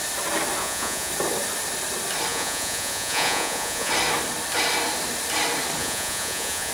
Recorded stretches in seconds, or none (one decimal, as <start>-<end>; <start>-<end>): 0.0-0.6; 1.1-2.3; 3.9-5.8